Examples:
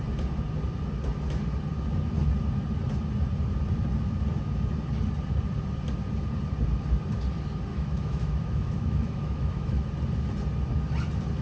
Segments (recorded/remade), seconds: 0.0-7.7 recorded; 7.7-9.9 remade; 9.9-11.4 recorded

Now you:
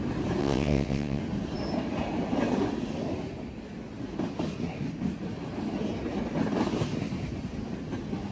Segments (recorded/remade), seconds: 0.0-0.4 recorded; 0.4-1.2 remade; 1.2-8.3 recorded

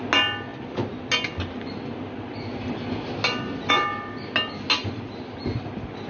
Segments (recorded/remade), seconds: 0.0-6.1 recorded

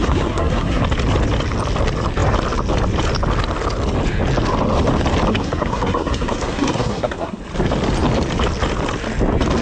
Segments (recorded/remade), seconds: 0.0-0.8 remade; 0.8-5.3 recorded; 5.3-7.4 remade; 7.4-9.6 recorded

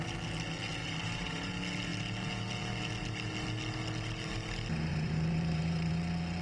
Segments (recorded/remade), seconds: 0.0-0.8 recorded; 0.8-1.5 remade; 1.5-4.9 recorded; 4.9-5.9 remade; 5.9-6.4 recorded